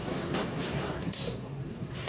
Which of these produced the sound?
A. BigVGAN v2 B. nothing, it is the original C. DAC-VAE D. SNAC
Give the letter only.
D